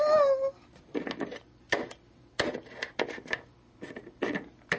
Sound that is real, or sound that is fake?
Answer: real